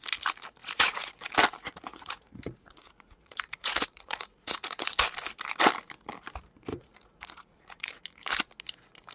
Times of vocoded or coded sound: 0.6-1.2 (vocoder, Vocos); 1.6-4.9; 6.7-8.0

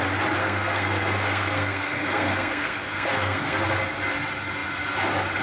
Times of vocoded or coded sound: 0.4-3.6 (codec, SNAC)

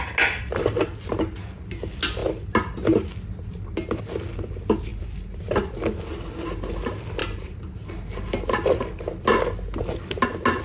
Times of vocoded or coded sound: 4.9-5.4 (vocoder, BigVGAN v2); 7.2-8.9

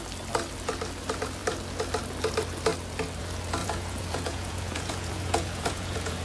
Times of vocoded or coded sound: 3.6-6.2 (vocoder, Vocos)

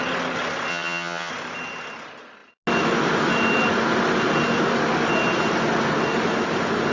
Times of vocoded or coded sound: 0.7-1.3 (vocoder, HiFi-GAN)

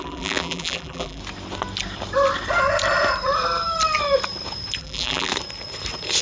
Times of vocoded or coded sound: 0.0-1.2 (vocoder, BigVGAN v2); 4.8-5.3